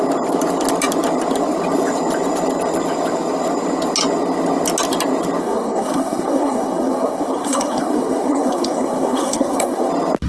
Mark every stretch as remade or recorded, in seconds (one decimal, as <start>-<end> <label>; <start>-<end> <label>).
0.0-5.4 recorded; 5.4-9.9 remade; 9.9-10.3 recorded